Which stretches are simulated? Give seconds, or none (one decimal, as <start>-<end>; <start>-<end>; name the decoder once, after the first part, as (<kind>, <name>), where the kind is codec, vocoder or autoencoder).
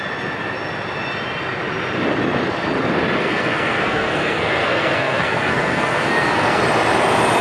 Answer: 3.2-6.6 (codec, SNAC)